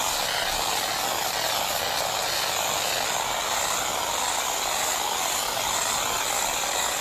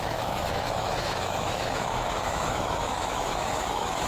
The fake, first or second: second